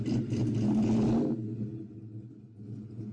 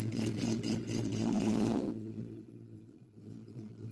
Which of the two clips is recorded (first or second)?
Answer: first